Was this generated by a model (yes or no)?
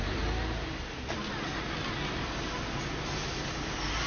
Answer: no